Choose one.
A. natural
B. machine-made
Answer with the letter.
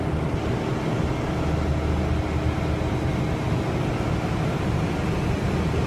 A